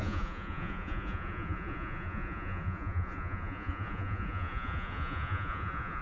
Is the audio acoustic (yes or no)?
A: no